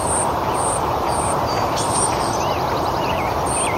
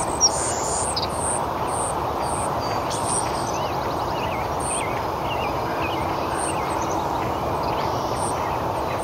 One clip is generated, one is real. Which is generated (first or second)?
first